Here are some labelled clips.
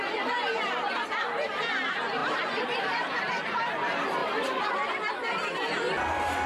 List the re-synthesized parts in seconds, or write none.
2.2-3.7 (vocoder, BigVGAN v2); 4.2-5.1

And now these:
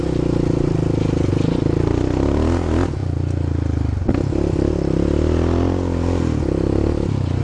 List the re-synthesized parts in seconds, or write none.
none

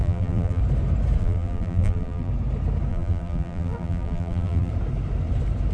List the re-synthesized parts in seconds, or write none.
0.0-0.6 (vocoder, BigVGAN v2); 1.2-2.3; 2.9-4.7